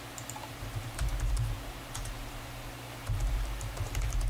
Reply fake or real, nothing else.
fake